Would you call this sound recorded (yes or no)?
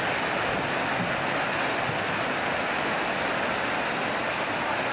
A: yes